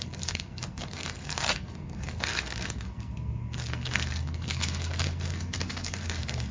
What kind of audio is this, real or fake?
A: fake